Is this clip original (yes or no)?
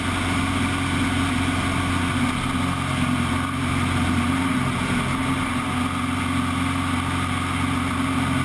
yes